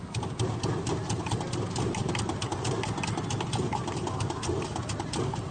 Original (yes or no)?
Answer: yes